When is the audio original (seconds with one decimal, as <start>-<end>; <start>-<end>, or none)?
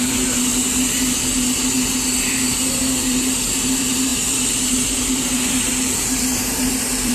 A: 0.5-2.3